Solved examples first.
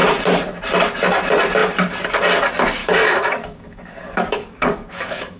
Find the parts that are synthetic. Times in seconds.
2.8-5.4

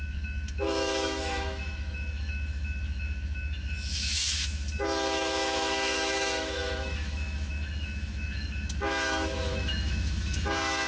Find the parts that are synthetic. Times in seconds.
0.0-10.9

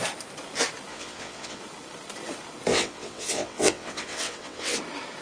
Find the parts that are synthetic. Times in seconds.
0.9-1.6; 2.7-4.8

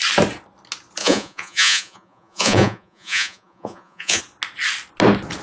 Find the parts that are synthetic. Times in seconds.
1.0-4.2